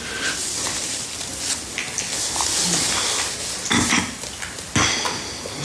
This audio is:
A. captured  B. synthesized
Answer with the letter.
A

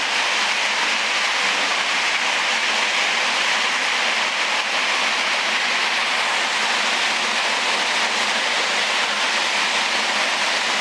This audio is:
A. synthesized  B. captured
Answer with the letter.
B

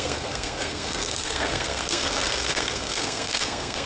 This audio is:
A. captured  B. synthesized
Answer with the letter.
B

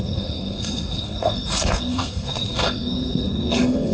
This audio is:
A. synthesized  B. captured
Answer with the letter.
A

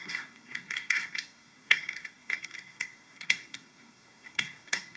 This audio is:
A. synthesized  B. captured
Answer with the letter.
A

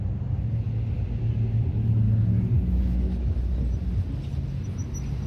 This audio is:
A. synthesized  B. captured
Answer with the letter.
B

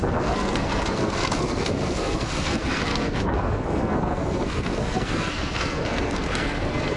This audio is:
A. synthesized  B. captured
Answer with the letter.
A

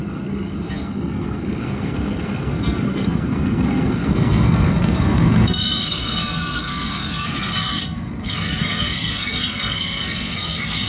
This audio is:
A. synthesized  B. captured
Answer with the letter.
A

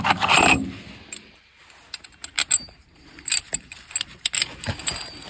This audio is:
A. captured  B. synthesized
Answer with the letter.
A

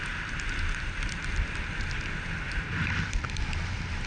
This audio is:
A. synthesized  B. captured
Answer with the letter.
B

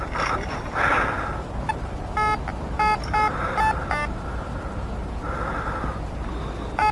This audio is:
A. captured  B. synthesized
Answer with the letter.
A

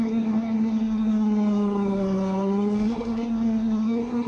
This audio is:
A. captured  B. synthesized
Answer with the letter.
B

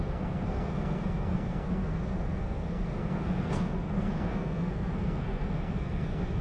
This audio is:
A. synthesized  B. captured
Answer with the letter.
A